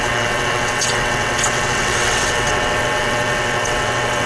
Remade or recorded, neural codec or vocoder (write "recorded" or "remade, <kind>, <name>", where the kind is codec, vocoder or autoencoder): remade, vocoder, WaveNeXt